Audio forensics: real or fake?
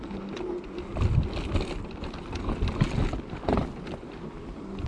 real